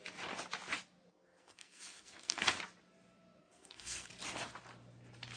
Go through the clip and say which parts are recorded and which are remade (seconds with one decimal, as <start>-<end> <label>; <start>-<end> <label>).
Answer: 0.0-1.1 recorded; 1.1-2.4 remade; 2.4-3.4 recorded; 3.4-4.1 remade; 4.1-5.4 recorded

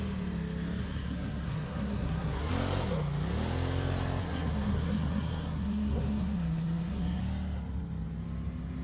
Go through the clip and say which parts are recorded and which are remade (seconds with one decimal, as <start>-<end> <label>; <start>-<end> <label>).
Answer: 0.0-0.8 recorded; 0.8-2.5 remade; 2.5-4.2 recorded; 4.2-7.2 remade; 7.2-8.8 recorded

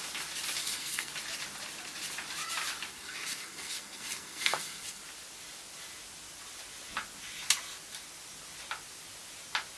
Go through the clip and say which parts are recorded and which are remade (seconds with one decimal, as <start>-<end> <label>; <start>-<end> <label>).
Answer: 0.0-0.6 recorded; 0.6-1.1 remade; 1.1-2.9 recorded; 2.9-5.0 remade; 5.0-9.8 recorded